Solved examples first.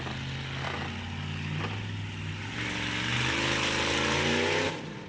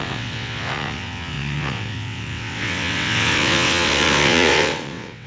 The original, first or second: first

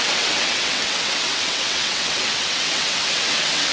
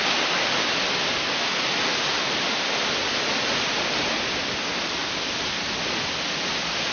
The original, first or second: second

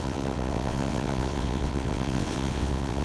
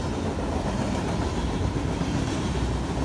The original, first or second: second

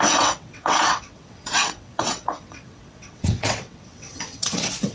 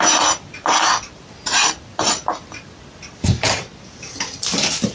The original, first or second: second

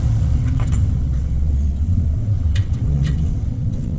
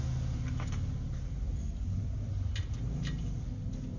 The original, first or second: second